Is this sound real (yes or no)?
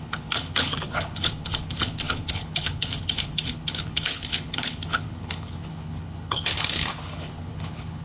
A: no